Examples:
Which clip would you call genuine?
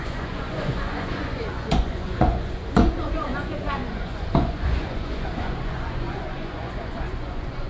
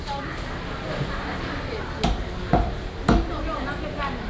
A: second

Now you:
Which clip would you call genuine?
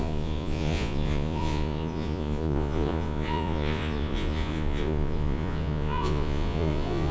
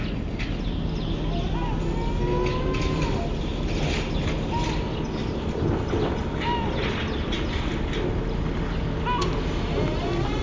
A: second